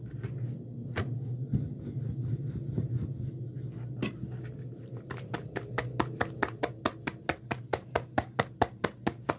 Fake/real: real